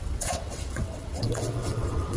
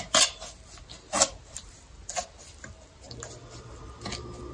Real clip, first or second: second